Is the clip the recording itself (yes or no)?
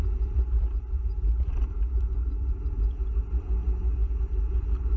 yes